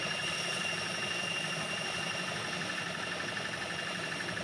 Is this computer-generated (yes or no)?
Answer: no